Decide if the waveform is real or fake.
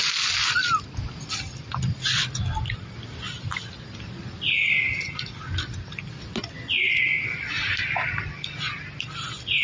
real